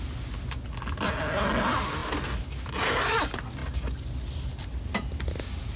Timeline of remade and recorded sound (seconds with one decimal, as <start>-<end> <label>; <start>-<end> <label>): 0.0-5.8 recorded

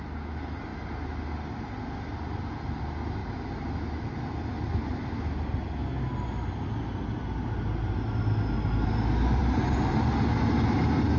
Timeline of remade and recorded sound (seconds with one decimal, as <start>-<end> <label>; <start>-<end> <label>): 0.0-11.2 recorded

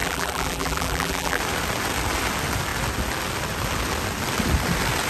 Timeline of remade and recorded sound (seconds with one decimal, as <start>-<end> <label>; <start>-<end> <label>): 0.0-1.4 remade; 1.4-5.1 recorded

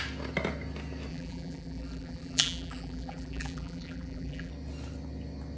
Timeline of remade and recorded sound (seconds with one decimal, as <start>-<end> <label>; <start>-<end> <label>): 0.0-1.1 recorded; 1.1-4.5 remade; 4.5-5.6 recorded